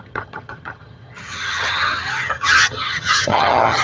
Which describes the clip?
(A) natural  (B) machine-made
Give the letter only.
B